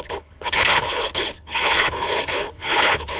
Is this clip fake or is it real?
fake